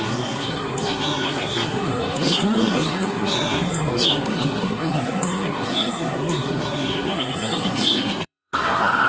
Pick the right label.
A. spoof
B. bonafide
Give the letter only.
A